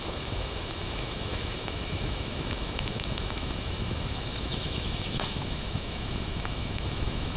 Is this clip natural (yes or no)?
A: no